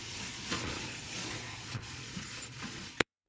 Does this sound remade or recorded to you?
remade